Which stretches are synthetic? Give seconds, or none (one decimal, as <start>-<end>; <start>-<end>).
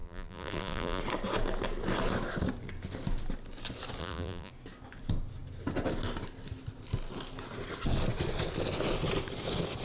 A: 0.0-1.0; 4.0-4.5